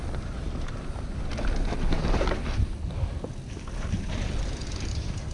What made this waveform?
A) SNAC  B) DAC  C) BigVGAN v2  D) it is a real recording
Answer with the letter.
D